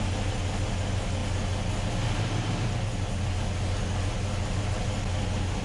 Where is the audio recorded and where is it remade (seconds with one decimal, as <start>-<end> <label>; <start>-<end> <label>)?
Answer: 0.0-5.6 recorded